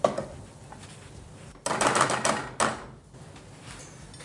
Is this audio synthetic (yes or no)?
no